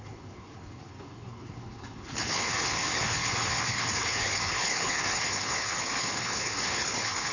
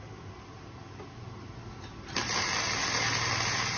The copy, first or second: first